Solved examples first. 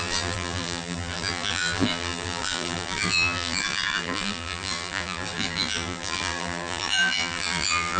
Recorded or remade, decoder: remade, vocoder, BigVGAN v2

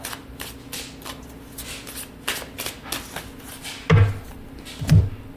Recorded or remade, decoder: recorded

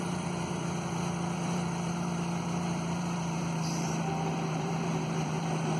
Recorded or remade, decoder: remade, vocoder, BigVGAN v2